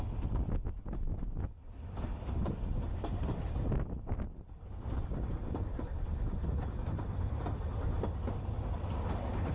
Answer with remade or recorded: recorded